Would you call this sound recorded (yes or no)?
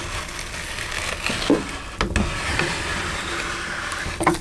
yes